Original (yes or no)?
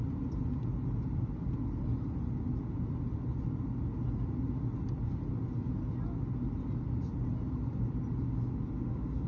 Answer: yes